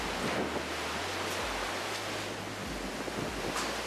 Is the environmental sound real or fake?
real